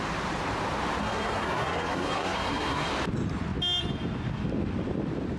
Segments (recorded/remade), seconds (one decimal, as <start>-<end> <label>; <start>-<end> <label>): 0.0-1.0 recorded; 1.0-2.9 remade; 2.9-5.4 recorded